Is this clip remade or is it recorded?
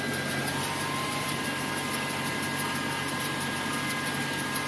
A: recorded